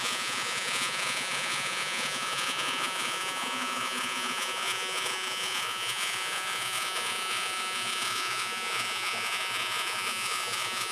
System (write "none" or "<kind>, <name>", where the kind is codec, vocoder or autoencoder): vocoder, Vocos